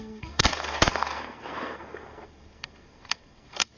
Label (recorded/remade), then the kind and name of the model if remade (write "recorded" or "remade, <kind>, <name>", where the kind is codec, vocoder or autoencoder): remade, codec, SNAC